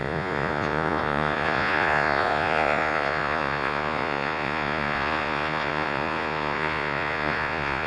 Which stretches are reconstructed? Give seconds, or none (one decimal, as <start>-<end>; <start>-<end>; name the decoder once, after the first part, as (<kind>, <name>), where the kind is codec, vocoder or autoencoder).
0.0-7.9 (vocoder, Vocos)